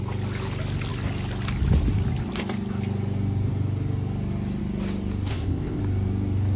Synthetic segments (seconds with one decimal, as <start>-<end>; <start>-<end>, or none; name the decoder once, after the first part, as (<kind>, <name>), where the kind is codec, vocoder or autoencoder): 5.3-5.8 (codec, ZipCodec)